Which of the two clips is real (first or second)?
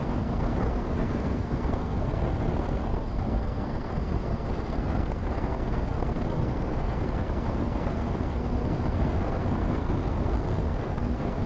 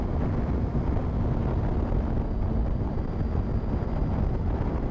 second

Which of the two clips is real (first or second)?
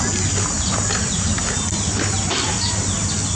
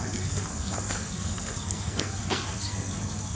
first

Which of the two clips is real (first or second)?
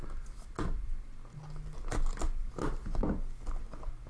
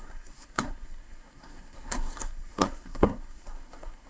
first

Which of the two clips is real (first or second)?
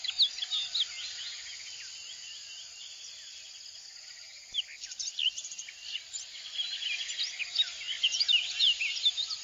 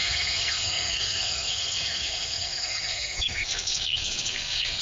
first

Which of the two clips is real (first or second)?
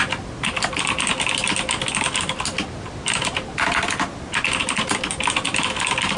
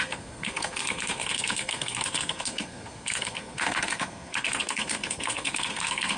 first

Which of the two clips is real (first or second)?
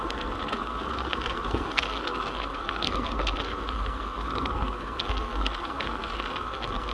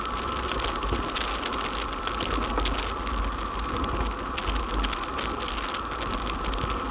second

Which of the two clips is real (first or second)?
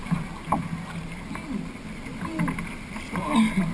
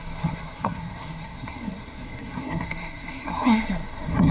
first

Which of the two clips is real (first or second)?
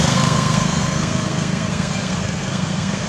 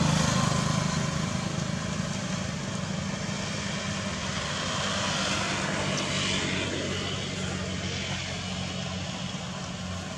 second